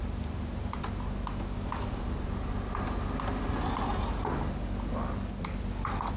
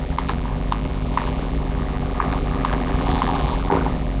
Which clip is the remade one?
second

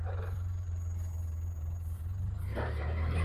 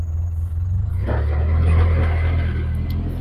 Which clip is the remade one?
first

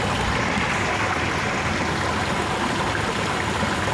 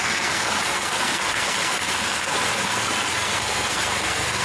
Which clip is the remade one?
second